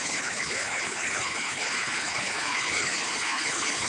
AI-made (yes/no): yes